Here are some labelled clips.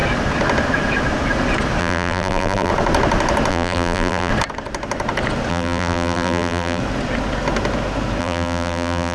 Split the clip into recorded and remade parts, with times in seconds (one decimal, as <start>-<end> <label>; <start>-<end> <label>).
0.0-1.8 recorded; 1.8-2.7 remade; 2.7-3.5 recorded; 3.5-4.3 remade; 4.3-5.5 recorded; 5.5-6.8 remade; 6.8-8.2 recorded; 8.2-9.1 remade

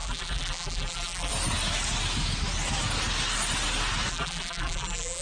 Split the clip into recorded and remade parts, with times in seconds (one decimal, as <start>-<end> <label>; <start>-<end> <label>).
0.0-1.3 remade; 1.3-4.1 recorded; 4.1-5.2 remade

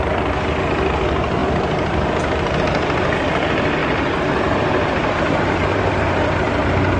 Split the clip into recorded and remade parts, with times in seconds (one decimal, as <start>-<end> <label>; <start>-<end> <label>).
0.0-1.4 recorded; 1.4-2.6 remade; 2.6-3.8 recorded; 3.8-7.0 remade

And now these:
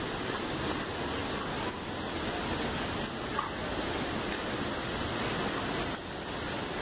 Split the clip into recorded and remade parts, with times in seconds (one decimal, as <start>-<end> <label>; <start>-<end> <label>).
0.0-6.8 recorded

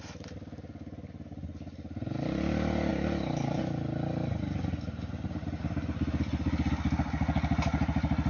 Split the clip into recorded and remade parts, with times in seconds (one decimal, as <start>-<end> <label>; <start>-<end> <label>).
0.0-8.3 recorded

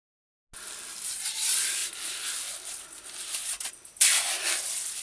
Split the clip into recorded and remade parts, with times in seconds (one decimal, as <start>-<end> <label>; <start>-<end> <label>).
0.0-1.8 recorded; 1.8-5.0 remade

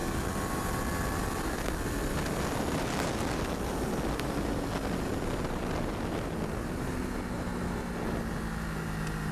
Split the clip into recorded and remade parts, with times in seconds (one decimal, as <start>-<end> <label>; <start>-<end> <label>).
0.0-9.3 recorded